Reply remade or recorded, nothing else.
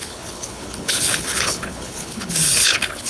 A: remade